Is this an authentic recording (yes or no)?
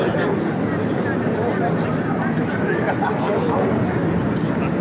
yes